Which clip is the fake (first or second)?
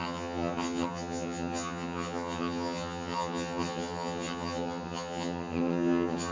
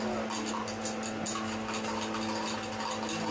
first